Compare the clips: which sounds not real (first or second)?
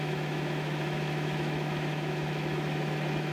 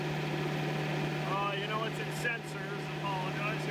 first